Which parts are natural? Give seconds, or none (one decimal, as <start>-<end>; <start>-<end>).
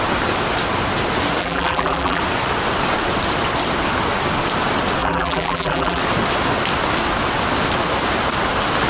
0.0-1.4; 2.2-5.0; 6.0-8.9